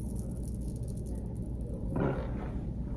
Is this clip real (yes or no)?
yes